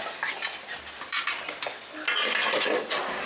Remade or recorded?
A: recorded